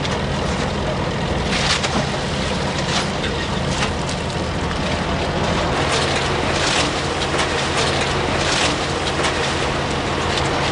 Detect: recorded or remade recorded